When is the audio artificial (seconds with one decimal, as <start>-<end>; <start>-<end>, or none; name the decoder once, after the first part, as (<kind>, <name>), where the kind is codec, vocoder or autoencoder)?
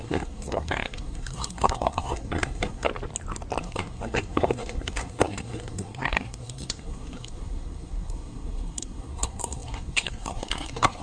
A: 0.0-2.9 (codec, SNAC); 3.6-11.0